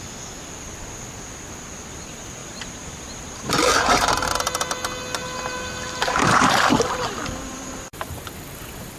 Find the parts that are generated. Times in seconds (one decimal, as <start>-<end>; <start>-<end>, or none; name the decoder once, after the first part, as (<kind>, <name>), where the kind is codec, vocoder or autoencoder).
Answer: 2.4-4.1 (vocoder, BigVGAN v2); 5.2-6.6; 7.5-8.6